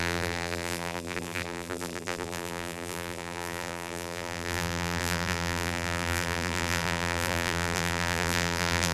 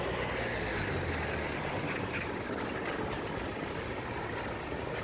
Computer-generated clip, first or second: first